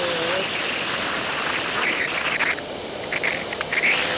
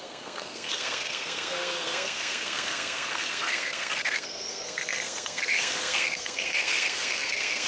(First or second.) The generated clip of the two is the second